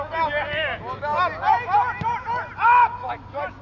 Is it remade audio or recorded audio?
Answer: recorded